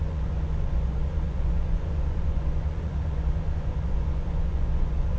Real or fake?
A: fake